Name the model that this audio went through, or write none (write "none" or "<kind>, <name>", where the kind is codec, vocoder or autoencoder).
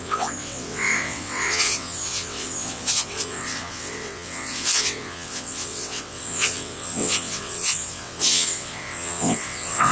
vocoder, WaveNeXt